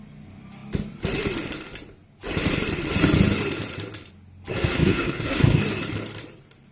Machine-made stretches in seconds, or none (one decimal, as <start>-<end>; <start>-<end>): 4.5-5.6